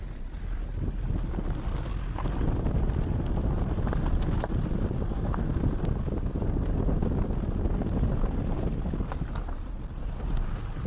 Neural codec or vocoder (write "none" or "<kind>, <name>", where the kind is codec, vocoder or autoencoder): none